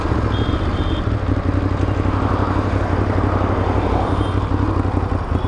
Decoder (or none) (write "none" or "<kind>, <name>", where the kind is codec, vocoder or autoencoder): none